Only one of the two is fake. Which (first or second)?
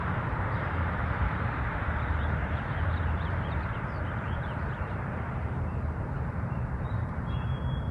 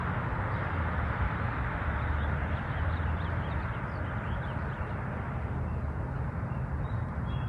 first